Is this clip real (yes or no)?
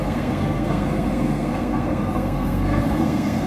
no